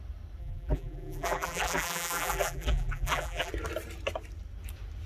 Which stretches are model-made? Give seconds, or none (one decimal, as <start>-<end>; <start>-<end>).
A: 0.4-3.5